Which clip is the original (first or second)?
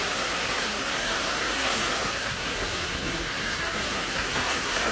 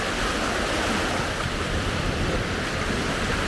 second